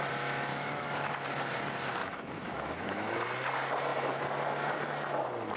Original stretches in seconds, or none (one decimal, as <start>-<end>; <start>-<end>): 0.0-0.5; 1.1-2.0; 3.1-5.6